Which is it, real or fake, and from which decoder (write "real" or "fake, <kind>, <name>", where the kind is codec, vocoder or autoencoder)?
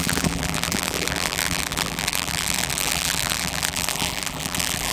fake, vocoder, BigVGAN v2